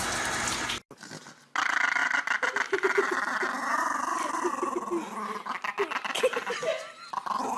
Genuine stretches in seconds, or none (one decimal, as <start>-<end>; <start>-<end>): 0.0-7.6